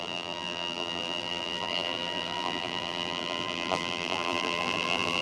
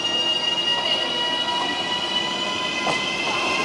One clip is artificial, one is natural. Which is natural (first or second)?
second